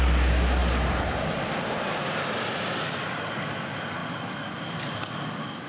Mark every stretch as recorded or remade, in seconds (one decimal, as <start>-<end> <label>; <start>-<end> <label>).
0.0-5.7 recorded